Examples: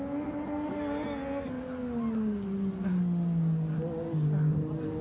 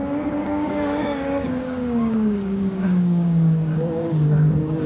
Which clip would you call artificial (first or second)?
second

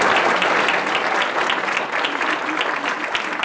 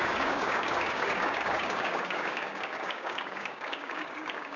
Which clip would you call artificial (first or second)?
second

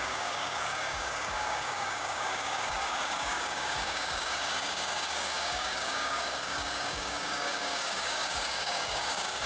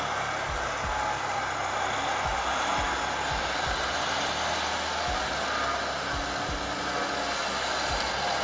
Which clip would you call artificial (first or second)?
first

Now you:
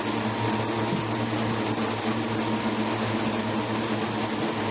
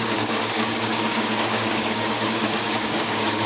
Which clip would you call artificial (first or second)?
second